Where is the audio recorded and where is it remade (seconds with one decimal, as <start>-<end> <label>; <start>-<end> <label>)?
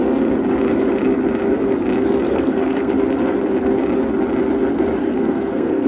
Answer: 0.0-2.3 recorded; 2.3-2.9 remade; 2.9-5.0 recorded; 5.0-5.9 remade